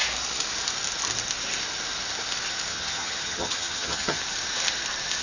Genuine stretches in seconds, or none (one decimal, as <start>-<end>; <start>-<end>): 0.0-2.7; 4.2-5.2